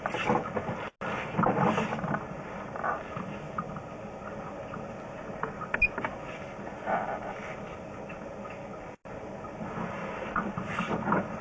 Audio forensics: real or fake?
real